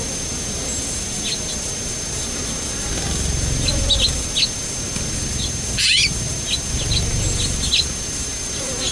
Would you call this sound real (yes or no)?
yes